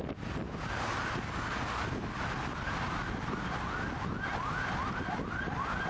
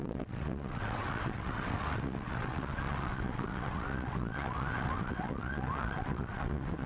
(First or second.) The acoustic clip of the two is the first